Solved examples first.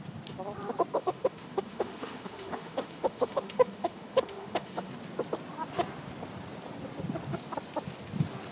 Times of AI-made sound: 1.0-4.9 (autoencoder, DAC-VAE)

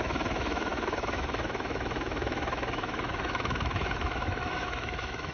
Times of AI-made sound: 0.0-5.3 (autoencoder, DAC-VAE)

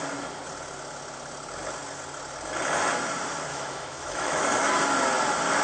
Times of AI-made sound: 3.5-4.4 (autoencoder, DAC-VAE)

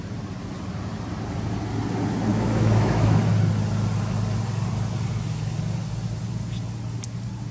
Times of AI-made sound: 2.3-3.2 (autoencoder, DAC-VAE)